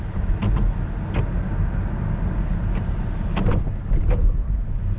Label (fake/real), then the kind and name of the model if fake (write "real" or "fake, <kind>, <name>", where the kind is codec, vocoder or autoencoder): real